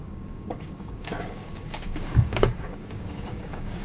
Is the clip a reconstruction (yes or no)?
yes